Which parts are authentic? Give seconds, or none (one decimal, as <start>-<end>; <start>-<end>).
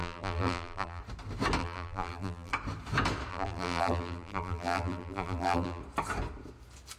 1.0-1.6; 2.5-3.3; 5.8-7.0